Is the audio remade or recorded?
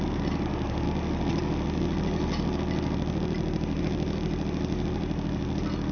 recorded